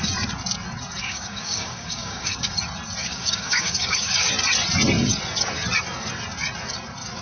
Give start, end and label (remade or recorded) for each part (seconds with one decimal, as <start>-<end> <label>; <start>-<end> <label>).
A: 0.0-1.0 recorded; 1.0-2.6 remade; 2.6-3.0 recorded; 3.0-4.3 remade; 4.3-7.2 recorded